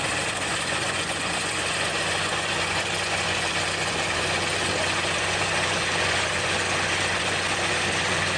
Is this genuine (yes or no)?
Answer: no